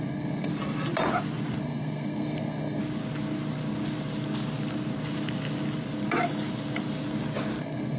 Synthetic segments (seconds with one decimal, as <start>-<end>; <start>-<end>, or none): 0.0-0.5; 1.6-2.8; 7.6-8.0